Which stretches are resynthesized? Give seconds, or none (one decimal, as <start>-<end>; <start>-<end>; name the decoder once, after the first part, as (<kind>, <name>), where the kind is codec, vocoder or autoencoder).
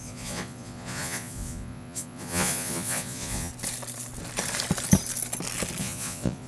0.0-3.5 (vocoder, Vocos); 5.8-6.5